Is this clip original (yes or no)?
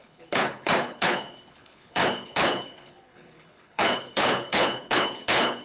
no